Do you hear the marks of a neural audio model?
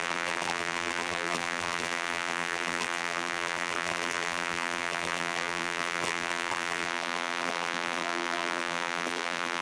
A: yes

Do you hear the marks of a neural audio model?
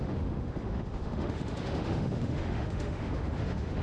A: yes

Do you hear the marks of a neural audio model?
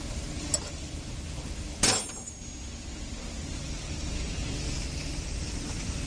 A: no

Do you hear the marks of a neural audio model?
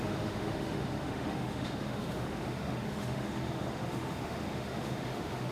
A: yes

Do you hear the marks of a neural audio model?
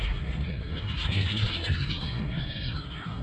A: yes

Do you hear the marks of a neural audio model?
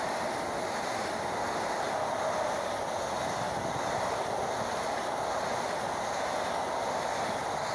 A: no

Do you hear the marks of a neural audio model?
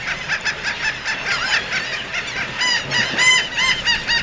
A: no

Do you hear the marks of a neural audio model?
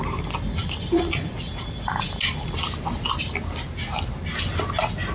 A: no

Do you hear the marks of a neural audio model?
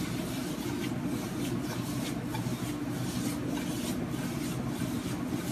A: no